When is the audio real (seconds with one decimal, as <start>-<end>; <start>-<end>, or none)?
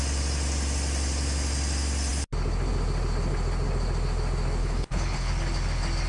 0.0-4.6; 5.3-6.1